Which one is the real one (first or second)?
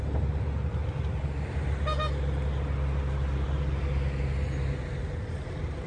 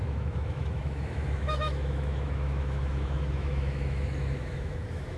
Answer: first